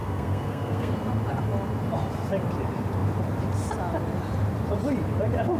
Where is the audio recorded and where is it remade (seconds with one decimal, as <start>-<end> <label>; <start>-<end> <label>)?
0.0-0.9 remade; 0.9-5.6 recorded